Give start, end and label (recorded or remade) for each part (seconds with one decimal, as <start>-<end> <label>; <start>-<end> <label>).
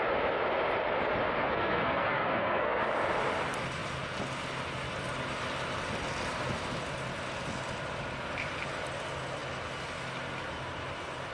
0.0-1.4 recorded; 1.4-2.8 remade; 2.8-11.3 recorded